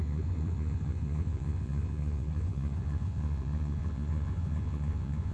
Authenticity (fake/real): fake